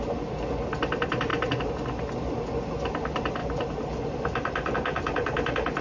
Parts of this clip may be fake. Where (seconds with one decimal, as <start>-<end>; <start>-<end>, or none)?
none